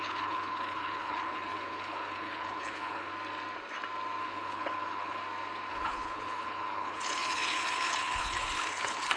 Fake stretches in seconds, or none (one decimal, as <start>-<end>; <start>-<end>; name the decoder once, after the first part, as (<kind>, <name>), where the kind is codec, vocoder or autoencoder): 0.0-3.1 (codec, HILCodec); 4.2-5.2; 5.7-9.2